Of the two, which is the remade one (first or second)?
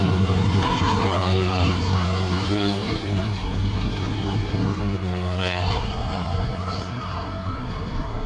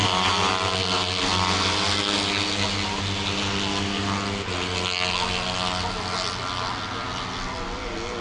first